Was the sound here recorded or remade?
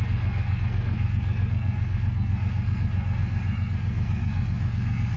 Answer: remade